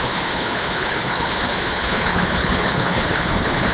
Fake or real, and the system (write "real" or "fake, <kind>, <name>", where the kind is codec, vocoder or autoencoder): fake, codec, HILCodec